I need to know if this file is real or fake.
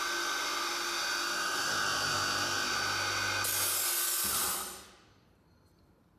real